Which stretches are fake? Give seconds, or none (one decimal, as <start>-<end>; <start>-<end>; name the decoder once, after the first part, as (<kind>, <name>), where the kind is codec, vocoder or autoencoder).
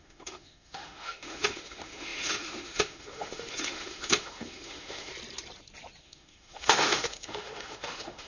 0.0-5.1 (autoencoder, DAC-VAE); 6.0-8.3